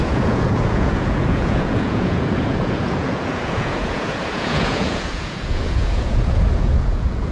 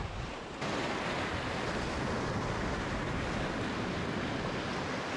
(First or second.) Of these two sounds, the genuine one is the second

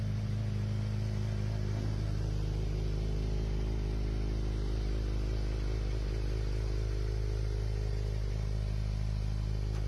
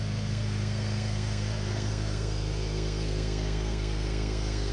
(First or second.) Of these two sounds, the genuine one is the first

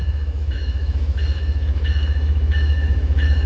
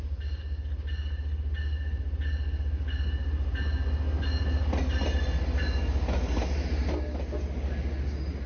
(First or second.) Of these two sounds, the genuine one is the second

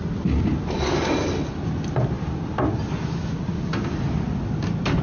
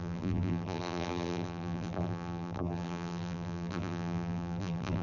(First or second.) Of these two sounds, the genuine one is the first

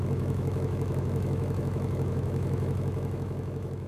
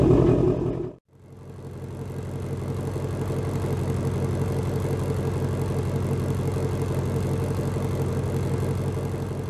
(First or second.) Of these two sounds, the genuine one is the second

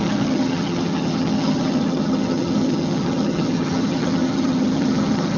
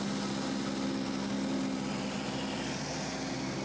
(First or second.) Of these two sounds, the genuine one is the second